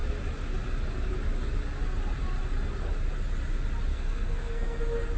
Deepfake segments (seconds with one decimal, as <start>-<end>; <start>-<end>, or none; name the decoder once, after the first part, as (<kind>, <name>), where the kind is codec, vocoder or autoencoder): 3.9-4.8 (codec, SNAC)